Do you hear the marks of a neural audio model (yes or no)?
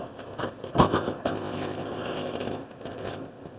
yes